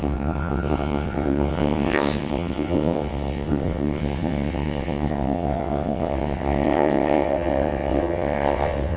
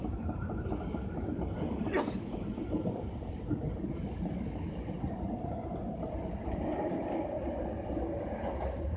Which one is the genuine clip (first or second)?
second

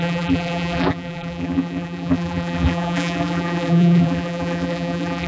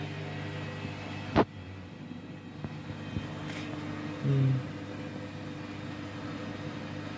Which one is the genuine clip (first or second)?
second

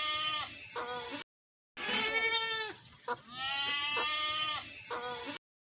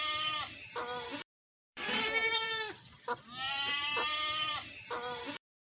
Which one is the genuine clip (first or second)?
first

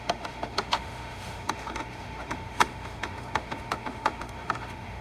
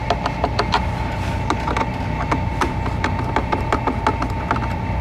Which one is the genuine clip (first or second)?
second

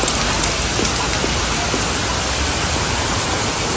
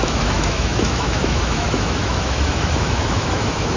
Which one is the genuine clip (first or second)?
first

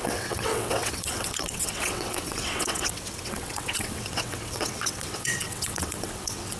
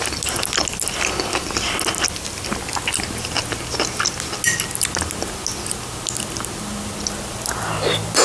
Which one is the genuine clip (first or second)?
second